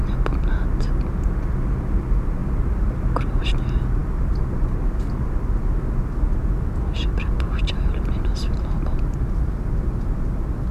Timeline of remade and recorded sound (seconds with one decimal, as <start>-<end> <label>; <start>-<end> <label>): 0.0-10.7 recorded